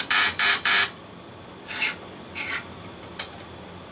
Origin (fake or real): real